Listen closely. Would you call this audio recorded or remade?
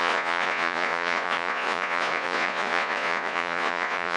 remade